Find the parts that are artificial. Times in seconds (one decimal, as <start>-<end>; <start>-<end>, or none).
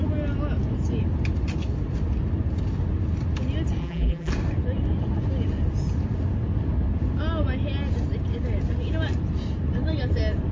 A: 3.8-4.3